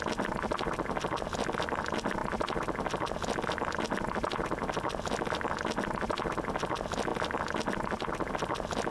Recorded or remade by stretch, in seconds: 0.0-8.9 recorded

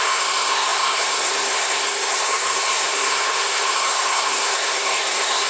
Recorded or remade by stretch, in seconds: 0.0-5.5 remade

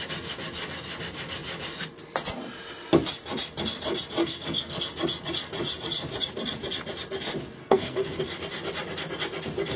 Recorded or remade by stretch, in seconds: 0.0-4.2 recorded; 4.2-4.8 remade; 4.8-7.6 recorded; 7.6-8.2 remade; 8.2-9.8 recorded

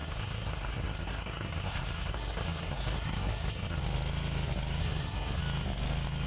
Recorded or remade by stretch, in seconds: 0.0-3.8 remade; 3.8-4.8 recorded; 4.8-5.4 remade; 5.4-6.3 recorded

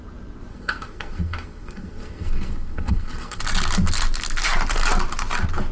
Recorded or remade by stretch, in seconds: 0.0-0.5 recorded; 0.5-3.4 remade; 3.4-5.7 recorded

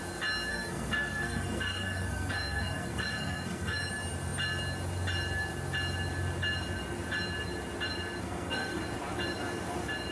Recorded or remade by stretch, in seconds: 0.0-0.5 recorded; 0.5-3.9 remade; 3.9-8.2 recorded; 8.2-8.8 remade; 8.8-10.1 recorded

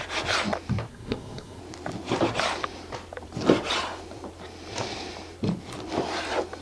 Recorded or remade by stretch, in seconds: 0.0-0.9 recorded; 0.9-1.6 remade; 1.6-6.6 recorded